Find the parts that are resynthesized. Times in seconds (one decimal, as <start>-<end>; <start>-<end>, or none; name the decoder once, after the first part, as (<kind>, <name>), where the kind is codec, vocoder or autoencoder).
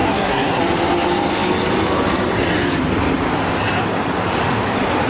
0.0-0.6 (codec, SNAC)